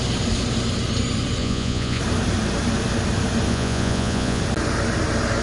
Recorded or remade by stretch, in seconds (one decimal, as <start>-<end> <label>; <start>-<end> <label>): 0.0-1.4 recorded; 1.4-2.0 remade; 2.0-3.5 recorded; 3.5-4.4 remade; 4.4-5.4 recorded